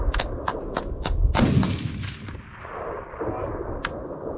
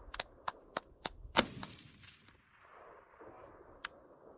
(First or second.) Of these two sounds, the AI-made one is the second